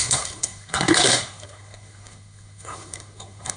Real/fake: fake